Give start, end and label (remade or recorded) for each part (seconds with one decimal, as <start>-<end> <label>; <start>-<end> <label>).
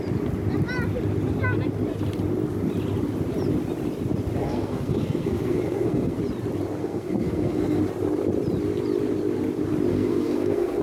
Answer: 0.0-4.4 recorded; 4.4-6.2 remade; 6.2-6.8 recorded; 6.8-7.8 remade; 7.8-9.9 recorded; 9.9-10.8 remade